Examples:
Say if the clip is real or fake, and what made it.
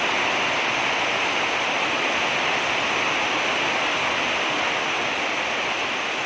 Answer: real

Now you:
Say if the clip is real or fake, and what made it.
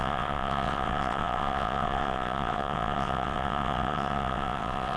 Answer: fake, vocoder, WaveNeXt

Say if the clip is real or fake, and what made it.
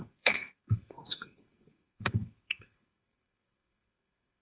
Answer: fake, codec, SNAC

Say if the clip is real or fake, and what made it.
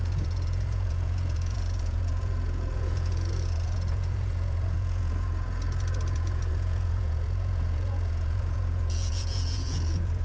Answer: fake, vocoder, Vocos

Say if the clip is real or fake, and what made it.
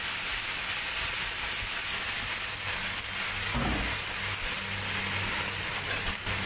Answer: real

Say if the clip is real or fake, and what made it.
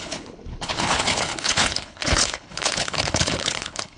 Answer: fake, codec, HILCodec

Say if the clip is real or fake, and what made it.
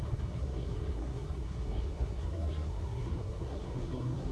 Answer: fake, codec, SNAC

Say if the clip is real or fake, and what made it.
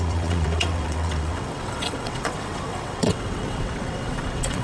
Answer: fake, vocoder, WaveNeXt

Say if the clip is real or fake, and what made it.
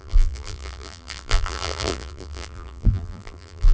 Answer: fake, vocoder, BigVGAN v2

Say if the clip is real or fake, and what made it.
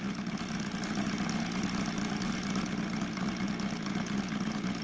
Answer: real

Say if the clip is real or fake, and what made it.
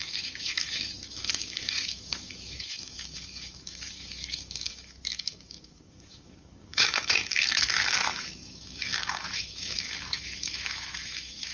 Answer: fake, autoencoder, DAC-VAE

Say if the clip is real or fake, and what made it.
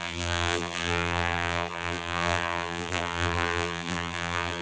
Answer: fake, vocoder, BigVGAN v2